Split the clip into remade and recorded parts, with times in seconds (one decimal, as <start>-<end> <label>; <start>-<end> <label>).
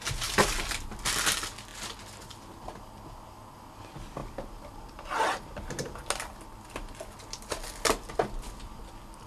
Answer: 0.0-9.3 recorded